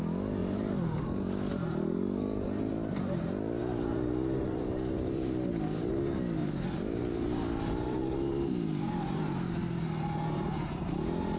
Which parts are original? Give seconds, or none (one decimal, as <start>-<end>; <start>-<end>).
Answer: 0.0-0.4; 1.0-3.6; 5.9-6.4; 9.5-11.4